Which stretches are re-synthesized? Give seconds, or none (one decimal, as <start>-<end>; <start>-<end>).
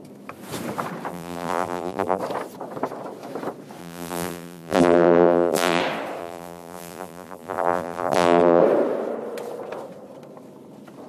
1.1-2.2; 3.8-5.8; 6.2-8.6